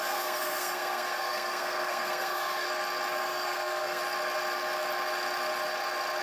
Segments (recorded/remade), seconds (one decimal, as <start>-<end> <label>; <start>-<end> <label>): 0.0-2.7 remade; 2.7-3.2 recorded; 3.2-4.0 remade; 4.0-6.2 recorded